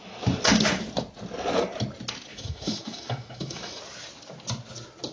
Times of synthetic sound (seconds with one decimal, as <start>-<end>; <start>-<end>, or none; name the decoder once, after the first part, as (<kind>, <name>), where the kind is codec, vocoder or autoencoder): 2.3-3.8 (autoencoder, DAC-VAE)